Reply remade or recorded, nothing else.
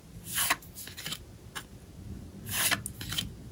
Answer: recorded